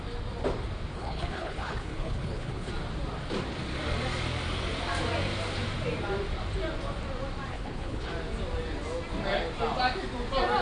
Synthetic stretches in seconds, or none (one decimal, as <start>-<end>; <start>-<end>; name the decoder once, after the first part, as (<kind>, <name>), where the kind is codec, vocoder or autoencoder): 0.9-2.7 (codec, HILCodec); 7.5-8.1